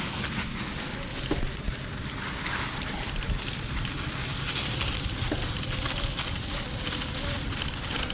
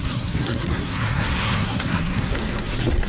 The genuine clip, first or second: first